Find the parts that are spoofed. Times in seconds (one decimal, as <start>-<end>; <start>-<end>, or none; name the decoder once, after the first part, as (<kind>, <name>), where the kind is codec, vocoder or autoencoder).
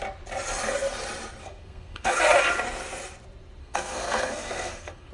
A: 1.4-2.2 (codec, SNAC); 3.6-5.1